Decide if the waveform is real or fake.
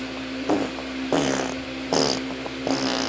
real